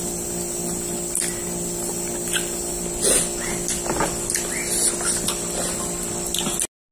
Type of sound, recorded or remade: recorded